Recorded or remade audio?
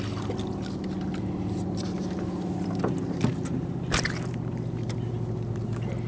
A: recorded